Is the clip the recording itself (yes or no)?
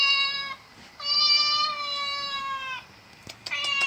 yes